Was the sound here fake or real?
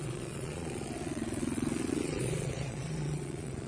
fake